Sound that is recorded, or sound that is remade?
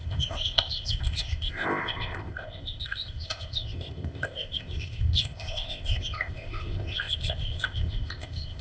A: remade